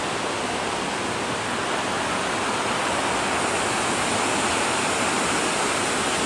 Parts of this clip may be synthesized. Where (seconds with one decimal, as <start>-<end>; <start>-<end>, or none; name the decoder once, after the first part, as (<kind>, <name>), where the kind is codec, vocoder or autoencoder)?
none